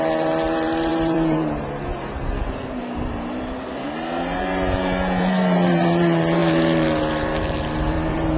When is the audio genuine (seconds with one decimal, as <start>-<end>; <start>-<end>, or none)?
none